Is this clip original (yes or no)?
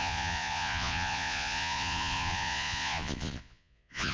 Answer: no